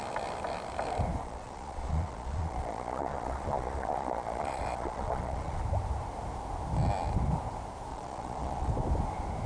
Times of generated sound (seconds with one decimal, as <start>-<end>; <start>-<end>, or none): 1.2-5.6; 7.9-8.7